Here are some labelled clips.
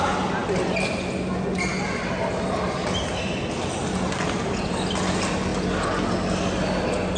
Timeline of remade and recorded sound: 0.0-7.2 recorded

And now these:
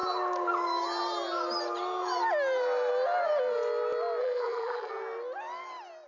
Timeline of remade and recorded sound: 0.0-4.2 recorded; 4.2-4.9 remade; 4.9-6.1 recorded

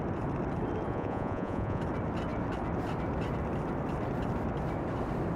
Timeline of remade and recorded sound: 0.0-0.9 recorded; 0.9-1.8 remade; 1.8-5.4 recorded

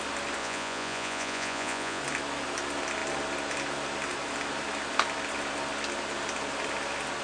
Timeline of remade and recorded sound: 0.0-0.4 recorded; 0.4-2.0 remade; 2.0-7.2 recorded

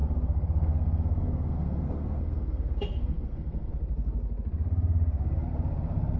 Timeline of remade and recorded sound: 0.0-3.7 remade; 3.7-6.2 recorded